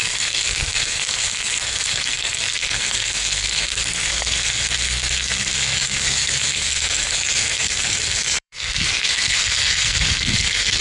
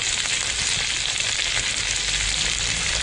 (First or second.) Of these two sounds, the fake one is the first